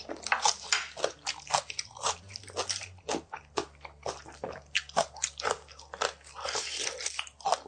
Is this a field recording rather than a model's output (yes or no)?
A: yes